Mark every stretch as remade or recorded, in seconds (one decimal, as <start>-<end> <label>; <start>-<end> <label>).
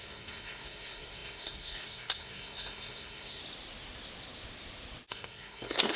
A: 0.0-3.4 remade; 3.4-5.1 recorded; 5.1-6.0 remade